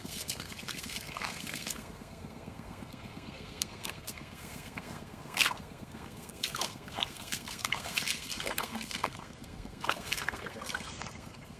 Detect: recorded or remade remade